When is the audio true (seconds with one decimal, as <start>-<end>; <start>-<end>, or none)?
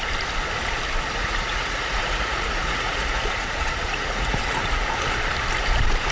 0.0-1.2; 4.9-6.1